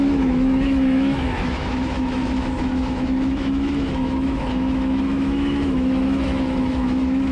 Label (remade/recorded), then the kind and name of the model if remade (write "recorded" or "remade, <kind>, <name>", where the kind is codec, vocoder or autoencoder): remade, autoencoder, DAC-VAE